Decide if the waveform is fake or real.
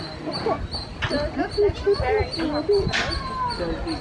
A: real